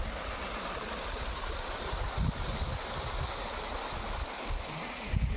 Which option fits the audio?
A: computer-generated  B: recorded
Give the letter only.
B